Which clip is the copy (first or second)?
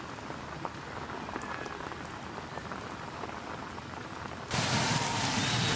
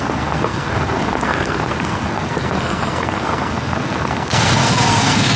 second